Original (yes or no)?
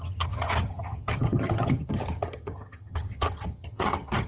no